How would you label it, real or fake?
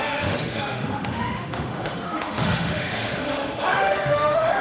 fake